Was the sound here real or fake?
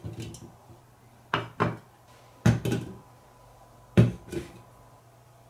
real